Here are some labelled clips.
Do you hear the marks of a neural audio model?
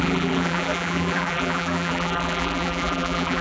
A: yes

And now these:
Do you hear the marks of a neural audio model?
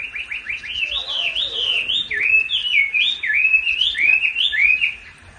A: no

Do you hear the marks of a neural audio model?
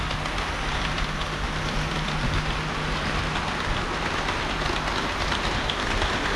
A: no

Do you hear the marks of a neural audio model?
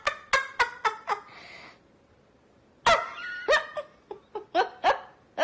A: no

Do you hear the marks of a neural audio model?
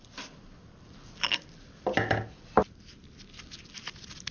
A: no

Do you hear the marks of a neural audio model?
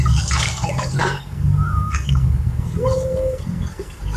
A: yes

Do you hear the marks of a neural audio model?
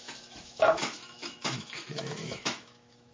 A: yes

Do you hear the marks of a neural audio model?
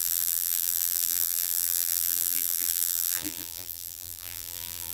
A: yes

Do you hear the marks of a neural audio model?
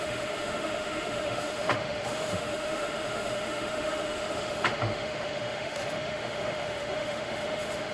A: yes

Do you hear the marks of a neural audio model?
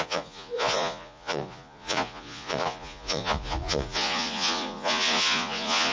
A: yes